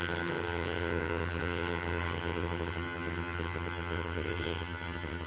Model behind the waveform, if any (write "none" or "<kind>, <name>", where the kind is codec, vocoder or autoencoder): vocoder, HiFi-GAN